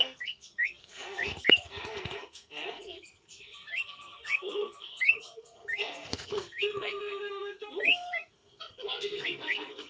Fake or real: fake